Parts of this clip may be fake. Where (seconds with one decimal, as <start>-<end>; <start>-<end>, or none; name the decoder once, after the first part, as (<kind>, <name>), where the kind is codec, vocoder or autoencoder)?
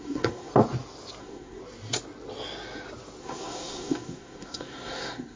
0.0-0.5 (codec, SNAC); 1.2-1.6; 3.2-5.4